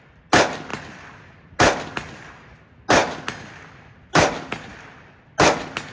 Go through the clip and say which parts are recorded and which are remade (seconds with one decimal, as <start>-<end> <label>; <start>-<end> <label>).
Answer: 0.0-5.9 recorded